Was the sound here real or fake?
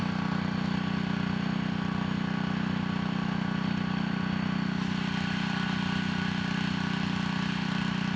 real